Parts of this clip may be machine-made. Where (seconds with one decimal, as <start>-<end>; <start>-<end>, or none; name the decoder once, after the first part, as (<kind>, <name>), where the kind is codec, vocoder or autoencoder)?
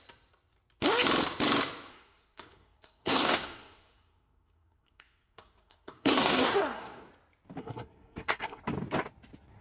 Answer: 1.9-7.1 (codec, SNAC); 7.6-8.6